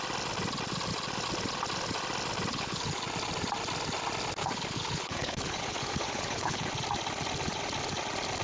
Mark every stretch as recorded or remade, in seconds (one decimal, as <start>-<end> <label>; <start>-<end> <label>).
0.0-2.5 recorded; 2.5-3.0 remade; 3.0-4.4 recorded; 4.4-6.7 remade; 6.7-8.4 recorded